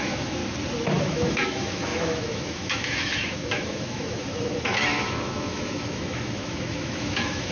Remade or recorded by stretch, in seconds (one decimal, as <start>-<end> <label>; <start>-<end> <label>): 0.0-0.4 remade; 0.4-1.0 recorded; 1.0-7.5 remade